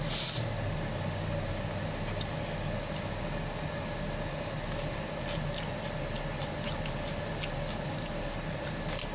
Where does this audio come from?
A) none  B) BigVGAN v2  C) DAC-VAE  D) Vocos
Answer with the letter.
A